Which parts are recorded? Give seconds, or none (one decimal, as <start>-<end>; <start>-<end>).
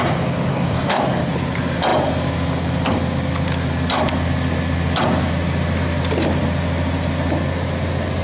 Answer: 0.0-0.5; 1.0-8.2